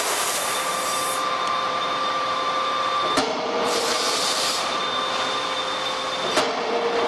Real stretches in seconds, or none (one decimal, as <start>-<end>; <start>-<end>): 4.8-7.1